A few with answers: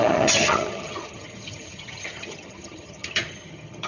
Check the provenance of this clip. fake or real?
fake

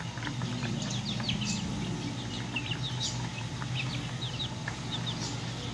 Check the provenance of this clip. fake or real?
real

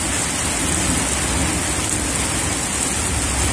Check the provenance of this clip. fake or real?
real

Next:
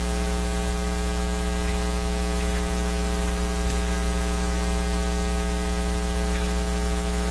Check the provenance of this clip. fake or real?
fake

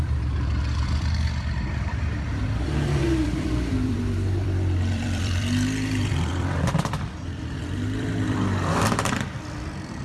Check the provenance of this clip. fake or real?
fake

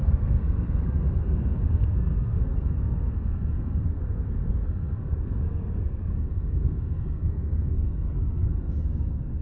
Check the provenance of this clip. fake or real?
fake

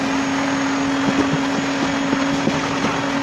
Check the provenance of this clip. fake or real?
real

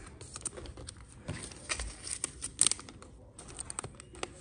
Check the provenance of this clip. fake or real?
real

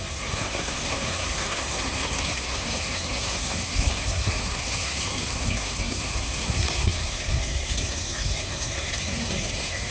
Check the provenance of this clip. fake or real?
fake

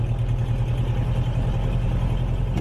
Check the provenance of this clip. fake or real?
real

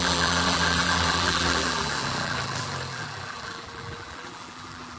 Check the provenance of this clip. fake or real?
fake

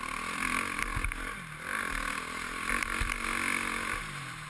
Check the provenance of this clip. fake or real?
real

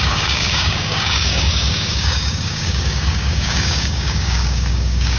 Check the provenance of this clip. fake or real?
fake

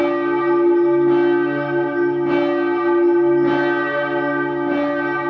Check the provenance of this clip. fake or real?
real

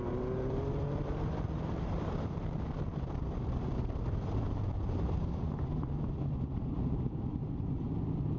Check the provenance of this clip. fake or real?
fake